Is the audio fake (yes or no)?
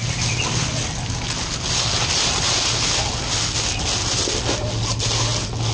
no